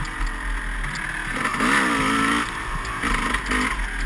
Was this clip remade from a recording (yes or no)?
no